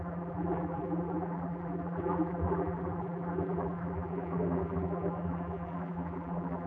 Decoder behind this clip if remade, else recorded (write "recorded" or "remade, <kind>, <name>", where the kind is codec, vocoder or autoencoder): remade, vocoder, BigVGAN v2